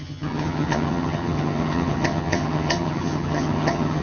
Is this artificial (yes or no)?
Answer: yes